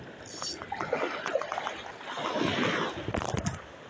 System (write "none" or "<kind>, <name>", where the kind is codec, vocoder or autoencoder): none